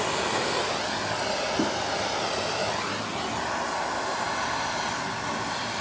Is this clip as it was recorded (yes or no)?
yes